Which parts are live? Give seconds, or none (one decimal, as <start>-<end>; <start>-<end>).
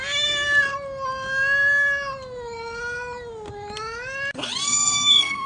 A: 0.0-4.7